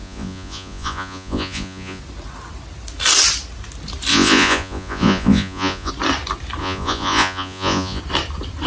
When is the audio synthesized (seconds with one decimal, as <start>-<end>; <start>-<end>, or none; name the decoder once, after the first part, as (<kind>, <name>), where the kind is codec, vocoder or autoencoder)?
0.0-2.0 (vocoder, Vocos); 4.1-5.9; 6.6-8.0